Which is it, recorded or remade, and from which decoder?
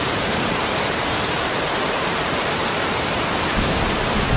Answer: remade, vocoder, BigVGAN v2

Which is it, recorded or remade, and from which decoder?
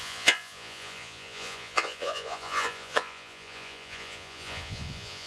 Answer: remade, vocoder, Vocos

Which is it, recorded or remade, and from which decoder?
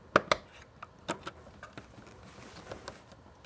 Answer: recorded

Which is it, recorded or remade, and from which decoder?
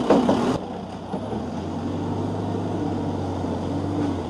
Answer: recorded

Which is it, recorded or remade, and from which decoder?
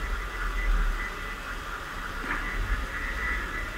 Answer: recorded